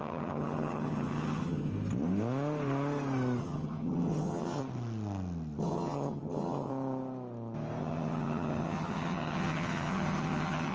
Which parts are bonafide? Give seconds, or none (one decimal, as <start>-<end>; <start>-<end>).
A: 1.7-3.4; 4.6-5.6; 6.7-7.8

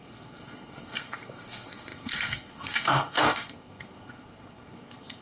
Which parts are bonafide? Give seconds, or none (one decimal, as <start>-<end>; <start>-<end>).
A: none

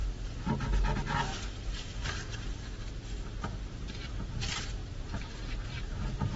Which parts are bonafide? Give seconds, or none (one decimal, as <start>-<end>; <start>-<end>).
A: 0.0-3.8